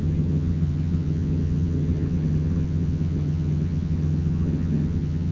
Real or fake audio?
fake